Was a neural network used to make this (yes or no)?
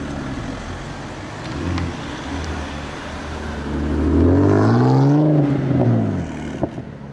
no